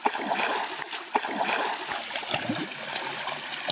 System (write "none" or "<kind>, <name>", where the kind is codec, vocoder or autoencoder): none